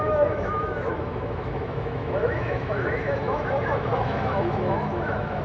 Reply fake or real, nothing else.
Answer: fake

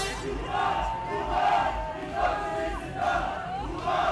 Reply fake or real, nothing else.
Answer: real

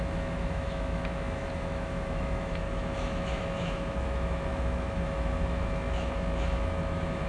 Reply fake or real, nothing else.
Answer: fake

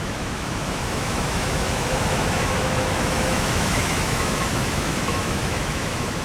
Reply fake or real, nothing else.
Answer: fake